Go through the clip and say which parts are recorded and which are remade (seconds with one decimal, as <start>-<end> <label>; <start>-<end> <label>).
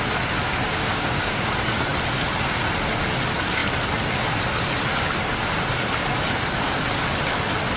0.0-0.4 recorded; 0.4-1.5 remade; 1.5-7.8 recorded